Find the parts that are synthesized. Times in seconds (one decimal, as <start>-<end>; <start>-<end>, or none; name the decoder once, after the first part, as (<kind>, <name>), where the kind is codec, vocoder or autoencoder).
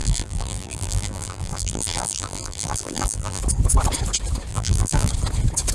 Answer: 0.0-3.4 (vocoder, BigVGAN v2); 4.5-5.1